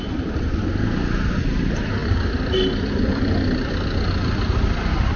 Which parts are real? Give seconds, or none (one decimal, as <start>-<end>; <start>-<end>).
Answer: 0.0-5.2